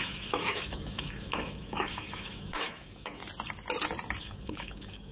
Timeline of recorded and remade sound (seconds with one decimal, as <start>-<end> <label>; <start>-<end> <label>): 0.0-3.2 remade; 3.2-4.2 recorded; 4.2-5.1 remade